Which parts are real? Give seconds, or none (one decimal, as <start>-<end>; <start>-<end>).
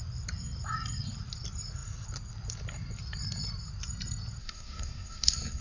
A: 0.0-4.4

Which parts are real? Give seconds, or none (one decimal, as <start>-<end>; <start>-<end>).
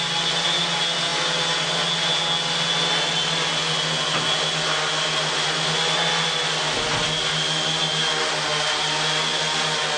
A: 0.0-10.0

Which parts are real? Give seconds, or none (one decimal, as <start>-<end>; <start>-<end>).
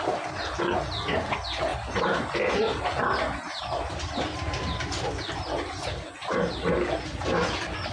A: 0.0-7.9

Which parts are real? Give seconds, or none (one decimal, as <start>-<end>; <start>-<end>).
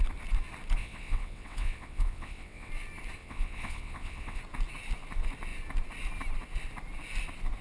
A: 0.0-0.8; 2.7-3.2; 4.4-7.6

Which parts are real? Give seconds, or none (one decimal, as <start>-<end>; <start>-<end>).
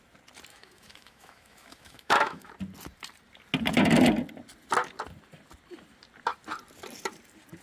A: 0.0-0.5; 2.5-7.6